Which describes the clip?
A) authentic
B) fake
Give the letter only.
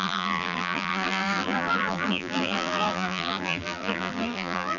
B